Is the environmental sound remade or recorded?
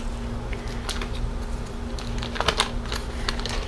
recorded